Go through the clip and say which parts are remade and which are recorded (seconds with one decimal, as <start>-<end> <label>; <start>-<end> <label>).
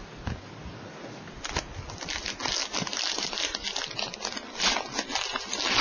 0.0-5.8 recorded